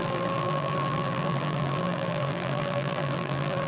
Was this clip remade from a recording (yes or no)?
yes